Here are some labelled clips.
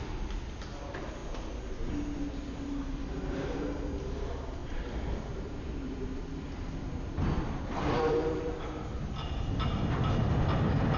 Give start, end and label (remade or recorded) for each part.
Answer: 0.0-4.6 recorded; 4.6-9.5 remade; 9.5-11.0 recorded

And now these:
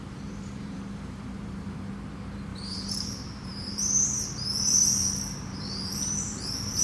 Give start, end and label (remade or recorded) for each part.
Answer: 0.0-1.9 remade; 1.9-2.5 recorded; 2.5-6.8 remade